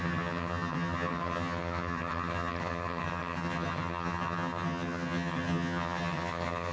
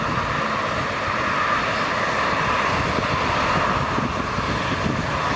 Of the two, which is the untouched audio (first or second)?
second